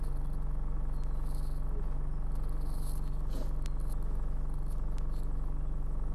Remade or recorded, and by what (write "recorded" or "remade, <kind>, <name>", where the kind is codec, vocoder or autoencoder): recorded